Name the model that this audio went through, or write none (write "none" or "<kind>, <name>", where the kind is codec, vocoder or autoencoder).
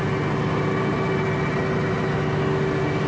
none